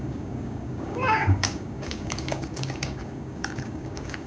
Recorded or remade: remade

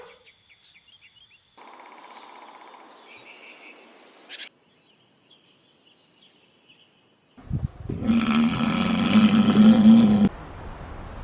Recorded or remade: recorded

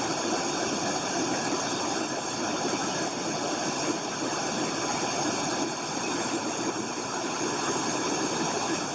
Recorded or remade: recorded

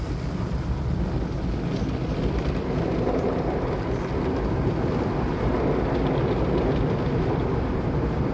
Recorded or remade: recorded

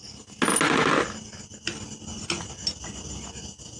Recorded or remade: recorded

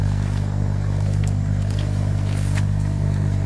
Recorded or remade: remade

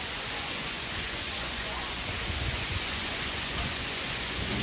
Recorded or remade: remade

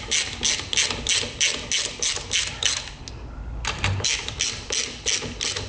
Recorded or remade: recorded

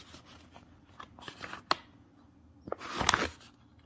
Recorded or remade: recorded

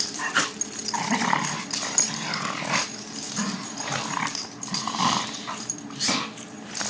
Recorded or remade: recorded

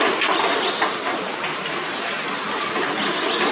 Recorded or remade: recorded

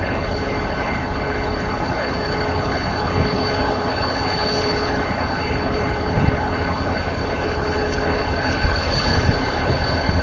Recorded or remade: remade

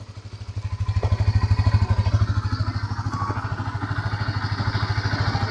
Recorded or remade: recorded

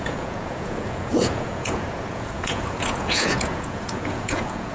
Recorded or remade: remade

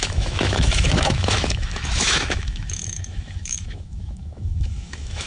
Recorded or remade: remade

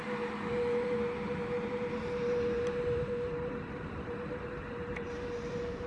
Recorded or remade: remade